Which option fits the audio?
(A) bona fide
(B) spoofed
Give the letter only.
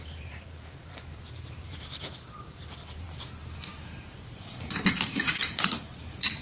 B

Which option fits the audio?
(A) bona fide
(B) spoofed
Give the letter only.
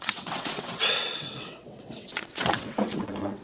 B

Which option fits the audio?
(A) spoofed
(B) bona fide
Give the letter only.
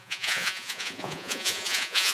A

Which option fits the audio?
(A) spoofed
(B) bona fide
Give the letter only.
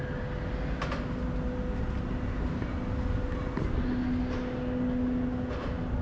B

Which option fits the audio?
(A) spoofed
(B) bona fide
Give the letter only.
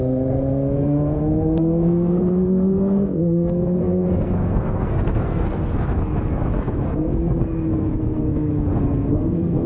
A